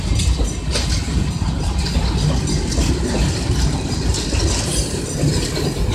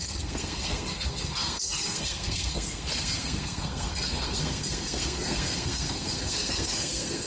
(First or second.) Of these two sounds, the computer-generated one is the second